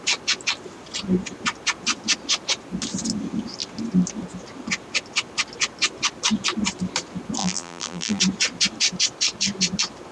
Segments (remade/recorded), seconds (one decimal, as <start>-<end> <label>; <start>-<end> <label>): 0.0-7.4 recorded; 7.4-8.2 remade; 8.2-10.1 recorded